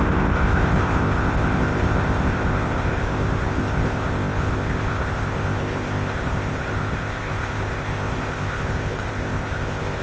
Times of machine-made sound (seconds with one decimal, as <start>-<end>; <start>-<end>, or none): 0.0-10.0